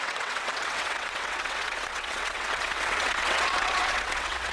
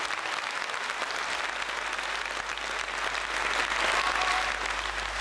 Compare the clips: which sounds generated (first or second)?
first